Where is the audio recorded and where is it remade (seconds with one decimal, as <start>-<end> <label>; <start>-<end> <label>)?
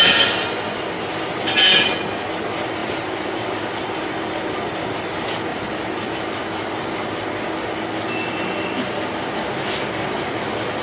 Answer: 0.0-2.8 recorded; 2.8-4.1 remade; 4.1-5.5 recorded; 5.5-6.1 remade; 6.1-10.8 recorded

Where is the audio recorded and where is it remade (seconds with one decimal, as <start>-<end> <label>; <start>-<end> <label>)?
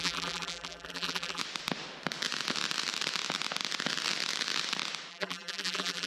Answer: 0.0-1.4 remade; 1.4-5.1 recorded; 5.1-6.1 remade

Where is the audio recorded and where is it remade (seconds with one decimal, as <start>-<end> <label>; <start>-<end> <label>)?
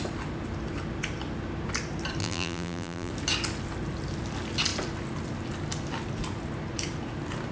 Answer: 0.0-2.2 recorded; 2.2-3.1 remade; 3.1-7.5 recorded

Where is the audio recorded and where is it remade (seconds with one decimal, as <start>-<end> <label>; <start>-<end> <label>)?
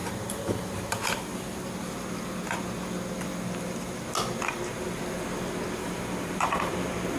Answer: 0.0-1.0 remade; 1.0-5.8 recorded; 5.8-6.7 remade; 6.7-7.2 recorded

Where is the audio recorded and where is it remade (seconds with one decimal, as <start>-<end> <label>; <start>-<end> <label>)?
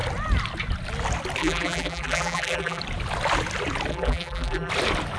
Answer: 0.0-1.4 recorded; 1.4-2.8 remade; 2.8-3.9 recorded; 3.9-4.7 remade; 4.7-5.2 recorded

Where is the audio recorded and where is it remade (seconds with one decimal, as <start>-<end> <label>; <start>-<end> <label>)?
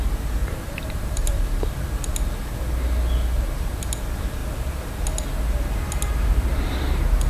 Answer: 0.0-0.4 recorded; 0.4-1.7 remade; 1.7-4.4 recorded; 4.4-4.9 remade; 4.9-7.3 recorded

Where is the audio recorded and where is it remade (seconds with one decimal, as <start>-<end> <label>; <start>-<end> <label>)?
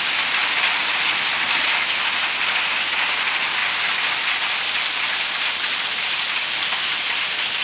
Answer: 0.0-7.6 recorded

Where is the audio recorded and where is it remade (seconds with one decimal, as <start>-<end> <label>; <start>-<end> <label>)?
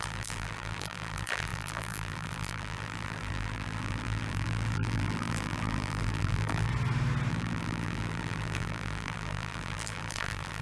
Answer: 0.0-6.7 remade; 6.7-7.3 recorded; 7.3-10.6 remade